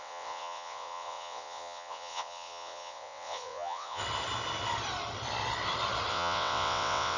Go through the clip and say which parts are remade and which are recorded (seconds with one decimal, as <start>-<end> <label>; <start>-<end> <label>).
0.0-4.0 remade; 4.0-6.1 recorded; 6.1-7.2 remade

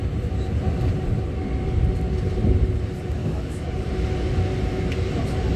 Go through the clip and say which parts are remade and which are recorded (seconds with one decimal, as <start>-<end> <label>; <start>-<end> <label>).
0.0-3.2 recorded; 3.2-3.9 remade; 3.9-5.6 recorded

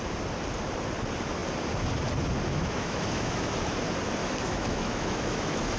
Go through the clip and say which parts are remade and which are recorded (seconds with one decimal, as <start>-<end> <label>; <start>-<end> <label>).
0.0-2.5 recorded; 2.5-3.6 remade; 3.6-4.2 recorded; 4.2-5.8 remade

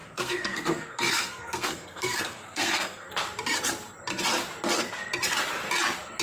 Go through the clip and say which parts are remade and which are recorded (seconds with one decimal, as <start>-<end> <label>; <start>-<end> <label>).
0.0-3.1 remade; 3.1-6.2 recorded

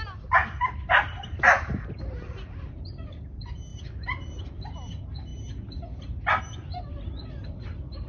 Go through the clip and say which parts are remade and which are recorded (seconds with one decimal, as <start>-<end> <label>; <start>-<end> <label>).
0.0-0.4 recorded; 0.4-3.2 remade; 3.2-3.7 recorded; 3.7-4.4 remade; 4.4-8.1 recorded

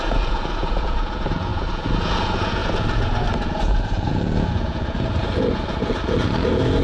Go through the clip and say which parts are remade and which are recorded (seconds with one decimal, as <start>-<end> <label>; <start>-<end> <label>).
0.0-6.8 remade

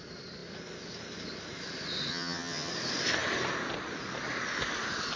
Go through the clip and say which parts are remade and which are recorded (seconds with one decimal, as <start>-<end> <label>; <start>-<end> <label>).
0.0-2.1 recorded; 2.1-2.7 remade; 2.7-5.2 recorded